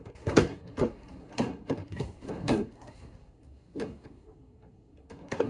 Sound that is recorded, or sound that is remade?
remade